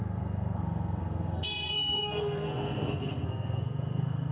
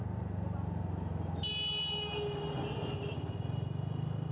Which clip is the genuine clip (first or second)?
second